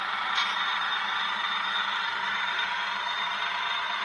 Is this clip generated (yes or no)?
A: yes